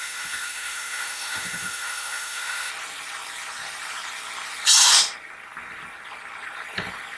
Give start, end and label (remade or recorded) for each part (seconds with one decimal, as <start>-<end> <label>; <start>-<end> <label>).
0.0-2.7 remade; 2.7-7.2 recorded